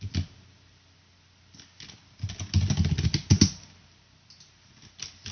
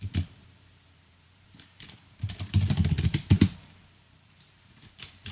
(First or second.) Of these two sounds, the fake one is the second